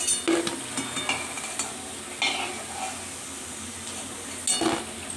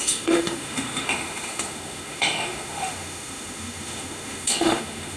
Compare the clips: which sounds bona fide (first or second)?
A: first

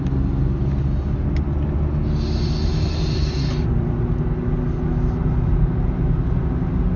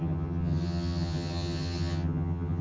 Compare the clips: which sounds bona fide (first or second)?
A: first